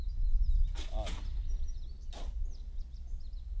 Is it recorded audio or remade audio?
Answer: recorded